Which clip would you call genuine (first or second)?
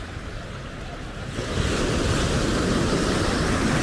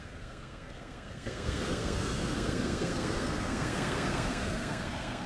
first